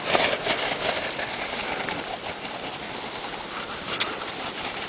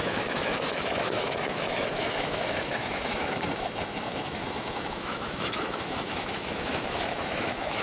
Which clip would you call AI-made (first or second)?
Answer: second